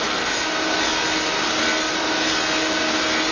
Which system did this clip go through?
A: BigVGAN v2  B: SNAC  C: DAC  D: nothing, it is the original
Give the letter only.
D